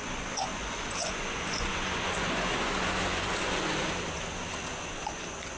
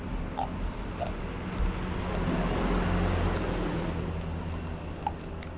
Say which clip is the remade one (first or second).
first